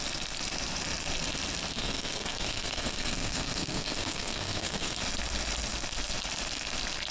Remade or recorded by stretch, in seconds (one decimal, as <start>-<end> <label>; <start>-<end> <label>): 0.0-1.7 recorded; 1.7-5.0 remade; 5.0-7.1 recorded